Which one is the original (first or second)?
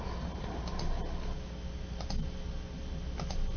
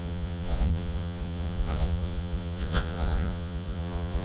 first